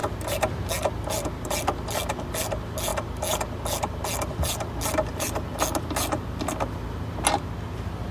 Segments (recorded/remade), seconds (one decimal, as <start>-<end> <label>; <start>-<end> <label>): 0.0-8.1 recorded